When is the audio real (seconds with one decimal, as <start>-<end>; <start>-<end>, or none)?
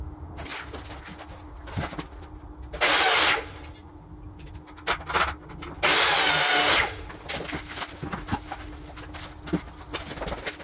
0.0-10.6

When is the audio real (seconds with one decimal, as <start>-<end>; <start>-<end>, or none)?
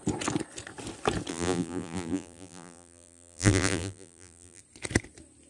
0.0-1.3; 4.6-5.5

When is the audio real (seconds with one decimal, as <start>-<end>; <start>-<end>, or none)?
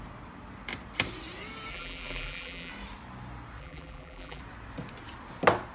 0.0-1.7; 2.7-3.6; 4.4-5.7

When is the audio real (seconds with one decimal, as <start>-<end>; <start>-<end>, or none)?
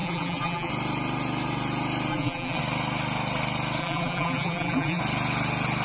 0.7-2.1; 2.6-3.8; 5.0-5.8